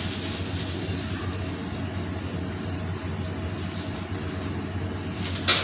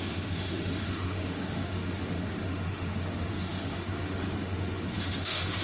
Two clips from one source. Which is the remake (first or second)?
second